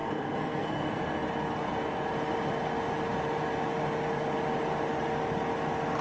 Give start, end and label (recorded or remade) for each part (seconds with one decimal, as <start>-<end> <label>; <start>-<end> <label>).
0.0-1.2 remade; 1.2-6.0 recorded